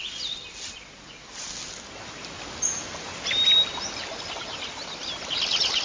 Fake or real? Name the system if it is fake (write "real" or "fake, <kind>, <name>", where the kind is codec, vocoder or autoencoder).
real